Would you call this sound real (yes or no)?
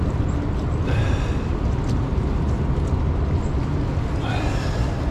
yes